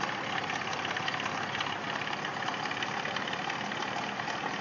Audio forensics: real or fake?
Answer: real